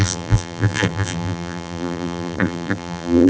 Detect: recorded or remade remade